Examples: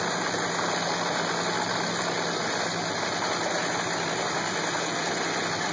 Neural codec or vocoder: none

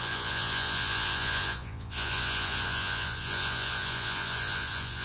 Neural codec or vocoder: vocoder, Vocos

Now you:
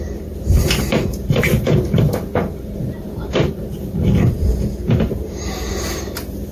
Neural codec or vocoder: vocoder, BigVGAN v2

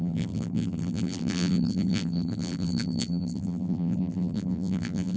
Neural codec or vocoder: vocoder, BigVGAN v2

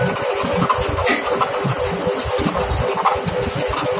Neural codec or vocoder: none